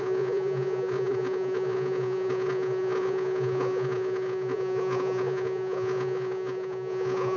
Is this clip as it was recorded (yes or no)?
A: no